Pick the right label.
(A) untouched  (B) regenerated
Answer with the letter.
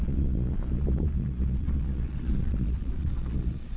B